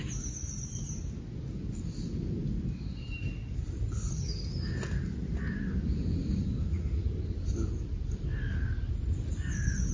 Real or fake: real